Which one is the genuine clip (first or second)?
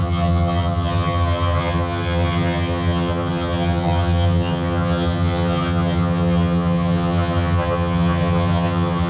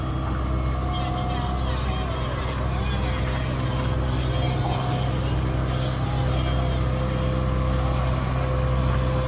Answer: second